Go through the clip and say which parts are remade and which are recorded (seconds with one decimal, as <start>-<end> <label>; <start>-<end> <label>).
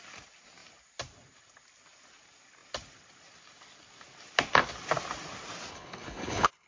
0.0-5.7 recorded; 5.7-6.7 remade